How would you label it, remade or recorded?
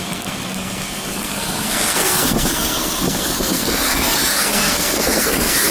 remade